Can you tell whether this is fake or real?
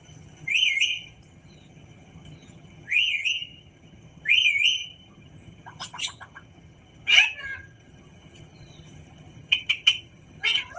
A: fake